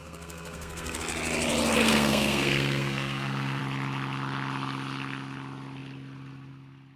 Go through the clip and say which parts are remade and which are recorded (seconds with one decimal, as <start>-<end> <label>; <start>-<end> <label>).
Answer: 0.0-1.0 remade; 1.0-1.8 recorded; 1.8-3.6 remade; 3.6-7.0 recorded